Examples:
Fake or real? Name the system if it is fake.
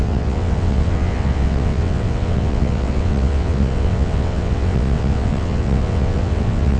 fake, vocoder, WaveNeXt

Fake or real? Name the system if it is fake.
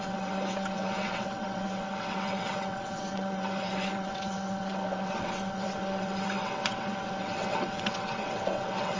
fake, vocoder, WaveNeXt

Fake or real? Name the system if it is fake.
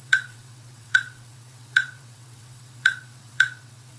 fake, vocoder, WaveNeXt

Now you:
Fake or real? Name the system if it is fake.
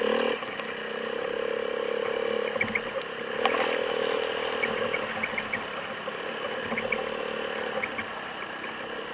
real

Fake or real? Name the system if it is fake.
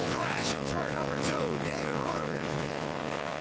fake, vocoder, WaveNeXt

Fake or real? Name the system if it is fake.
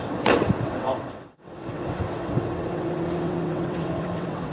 fake, vocoder, WaveNeXt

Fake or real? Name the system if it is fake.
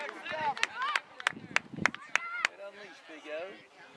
real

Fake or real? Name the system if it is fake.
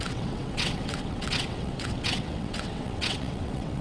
fake, vocoder, WaveNeXt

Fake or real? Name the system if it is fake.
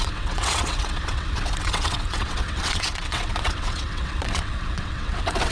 fake, vocoder, WaveNeXt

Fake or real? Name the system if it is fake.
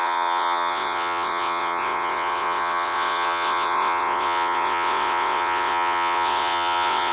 fake, vocoder, WaveNeXt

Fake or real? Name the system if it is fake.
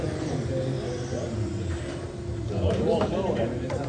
real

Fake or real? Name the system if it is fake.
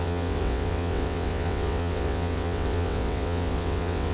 fake, vocoder, WaveNeXt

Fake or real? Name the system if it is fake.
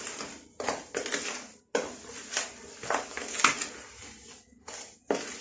real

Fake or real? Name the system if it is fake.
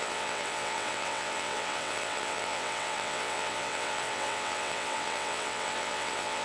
fake, vocoder, WaveNeXt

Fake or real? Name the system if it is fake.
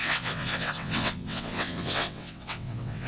fake, vocoder, WaveNeXt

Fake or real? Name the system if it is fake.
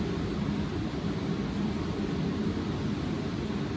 real